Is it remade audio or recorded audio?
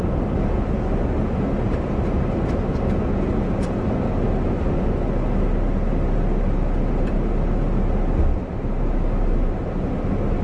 recorded